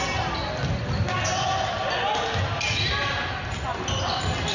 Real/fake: real